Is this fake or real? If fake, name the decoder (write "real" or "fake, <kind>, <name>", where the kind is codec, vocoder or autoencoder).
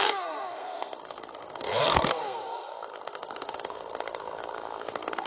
fake, codec, SNAC